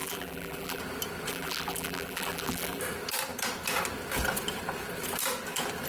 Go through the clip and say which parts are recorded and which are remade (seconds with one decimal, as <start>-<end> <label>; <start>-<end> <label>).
0.0-0.8 remade; 0.8-1.3 recorded; 1.3-2.8 remade; 2.8-5.9 recorded

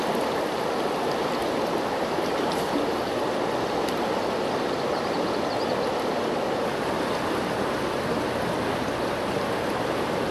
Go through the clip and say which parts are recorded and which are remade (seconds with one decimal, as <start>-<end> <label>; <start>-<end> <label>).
0.0-1.4 recorded; 1.4-3.0 remade; 3.0-10.3 recorded

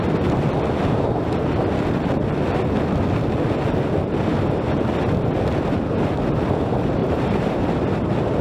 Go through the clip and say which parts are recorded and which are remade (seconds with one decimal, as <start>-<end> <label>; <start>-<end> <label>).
0.0-7.0 recorded; 7.0-7.7 remade; 7.7-8.4 recorded

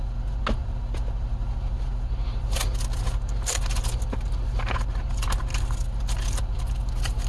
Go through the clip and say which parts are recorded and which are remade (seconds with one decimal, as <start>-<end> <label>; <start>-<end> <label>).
0.0-7.3 recorded

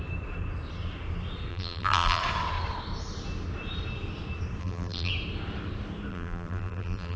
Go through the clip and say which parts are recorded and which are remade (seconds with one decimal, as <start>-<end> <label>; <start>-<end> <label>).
0.0-1.5 recorded; 1.5-2.2 remade; 2.2-4.6 recorded; 4.6-5.1 remade; 5.1-6.1 recorded; 6.1-7.2 remade

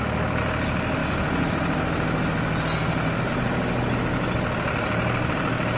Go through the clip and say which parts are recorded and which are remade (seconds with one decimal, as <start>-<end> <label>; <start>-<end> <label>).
0.0-5.8 recorded

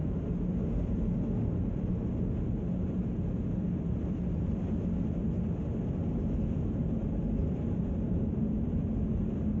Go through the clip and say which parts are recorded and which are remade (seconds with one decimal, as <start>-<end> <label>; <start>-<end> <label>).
0.0-7.4 recorded; 7.4-8.7 remade; 8.7-9.6 recorded